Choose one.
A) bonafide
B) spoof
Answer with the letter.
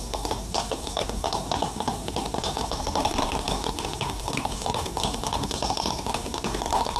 B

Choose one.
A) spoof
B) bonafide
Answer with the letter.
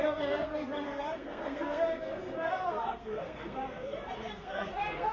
A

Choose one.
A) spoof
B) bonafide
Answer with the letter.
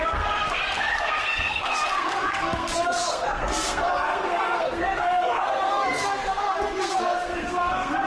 A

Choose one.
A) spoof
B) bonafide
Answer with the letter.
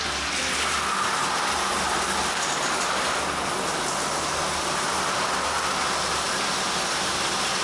B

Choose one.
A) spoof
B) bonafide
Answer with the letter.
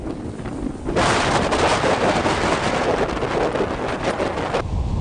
B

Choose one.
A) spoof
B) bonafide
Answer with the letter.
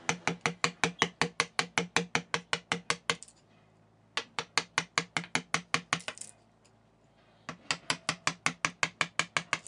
B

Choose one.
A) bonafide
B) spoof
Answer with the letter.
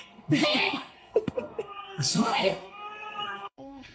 B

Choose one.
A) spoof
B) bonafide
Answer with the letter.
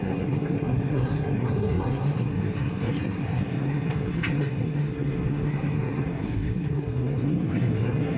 A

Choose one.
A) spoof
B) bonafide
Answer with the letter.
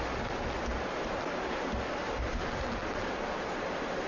B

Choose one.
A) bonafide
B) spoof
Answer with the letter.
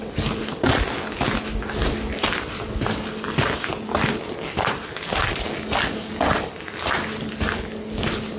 A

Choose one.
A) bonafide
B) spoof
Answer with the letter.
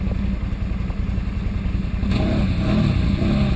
A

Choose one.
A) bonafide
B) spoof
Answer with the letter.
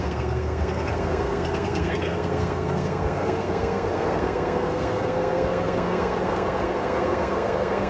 B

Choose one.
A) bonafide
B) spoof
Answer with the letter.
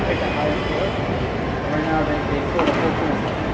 A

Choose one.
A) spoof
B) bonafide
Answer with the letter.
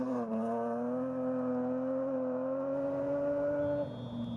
B